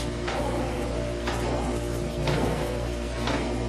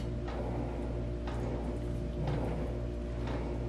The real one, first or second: second